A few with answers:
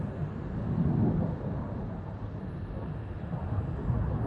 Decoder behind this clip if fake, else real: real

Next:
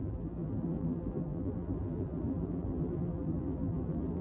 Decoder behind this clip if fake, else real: fake, vocoder, BigVGAN v2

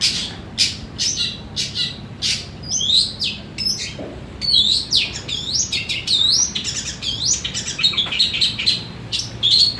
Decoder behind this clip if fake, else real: real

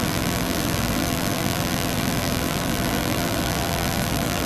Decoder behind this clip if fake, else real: fake, vocoder, BigVGAN v2